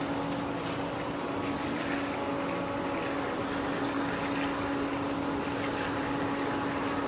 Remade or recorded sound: recorded